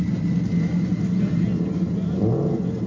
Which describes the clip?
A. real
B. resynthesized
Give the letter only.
A